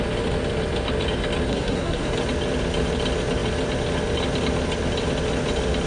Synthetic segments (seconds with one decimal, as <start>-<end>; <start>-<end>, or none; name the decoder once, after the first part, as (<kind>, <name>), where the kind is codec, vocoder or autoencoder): 1.5-2.1 (codec, SNAC)